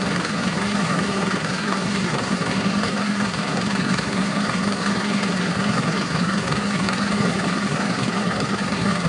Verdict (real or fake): fake